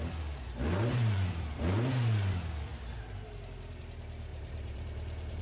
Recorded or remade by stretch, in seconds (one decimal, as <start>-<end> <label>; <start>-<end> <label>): 0.0-0.7 recorded; 0.7-1.3 remade; 1.3-4.3 recorded; 4.3-5.4 remade